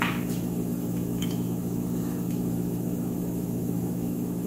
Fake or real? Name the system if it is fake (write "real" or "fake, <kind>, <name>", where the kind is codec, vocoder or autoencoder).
fake, autoencoder, DAC-VAE